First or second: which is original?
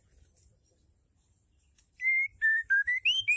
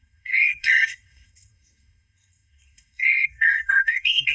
first